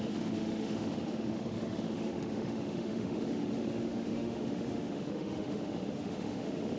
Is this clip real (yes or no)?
no